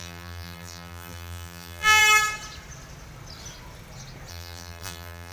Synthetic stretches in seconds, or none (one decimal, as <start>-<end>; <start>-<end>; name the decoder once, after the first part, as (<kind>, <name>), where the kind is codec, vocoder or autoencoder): 0.0-2.0 (vocoder, BigVGAN v2); 4.3-5.3